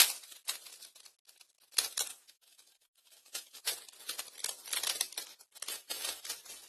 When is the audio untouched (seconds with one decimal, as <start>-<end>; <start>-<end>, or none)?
0.0-2.1; 3.6-5.7; 6.2-6.7